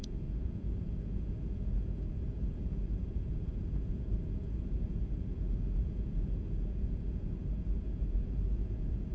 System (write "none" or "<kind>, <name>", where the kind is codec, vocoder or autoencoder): vocoder, Vocos